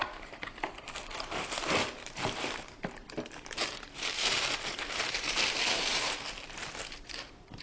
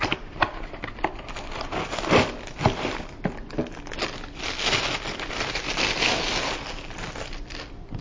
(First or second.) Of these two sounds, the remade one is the first